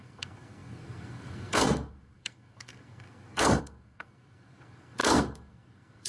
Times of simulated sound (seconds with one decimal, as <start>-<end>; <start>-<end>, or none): 0.0-6.1